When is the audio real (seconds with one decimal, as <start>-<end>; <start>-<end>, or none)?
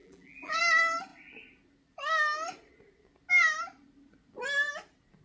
0.6-5.2